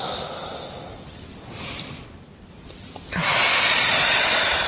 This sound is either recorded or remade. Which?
recorded